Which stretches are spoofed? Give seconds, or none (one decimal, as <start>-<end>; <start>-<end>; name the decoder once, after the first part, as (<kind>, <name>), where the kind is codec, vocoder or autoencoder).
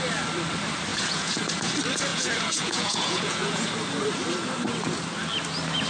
0.9-1.4 (vocoder, Vocos); 2.1-3.7